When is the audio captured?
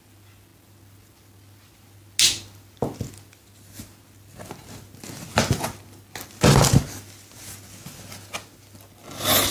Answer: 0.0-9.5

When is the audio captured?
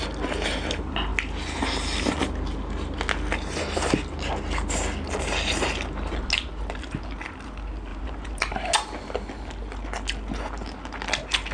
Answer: 0.0-7.9; 8.7-11.5